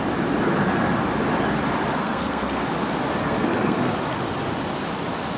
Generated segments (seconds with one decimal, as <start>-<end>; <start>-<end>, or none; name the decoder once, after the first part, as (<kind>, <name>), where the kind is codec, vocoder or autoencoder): 1.9-2.6 (codec, SNAC); 3.2-3.9